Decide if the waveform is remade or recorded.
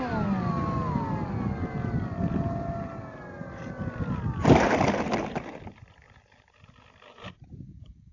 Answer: recorded